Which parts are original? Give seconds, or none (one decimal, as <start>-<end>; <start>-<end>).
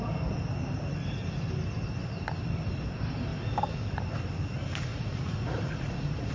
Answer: 0.0-4.9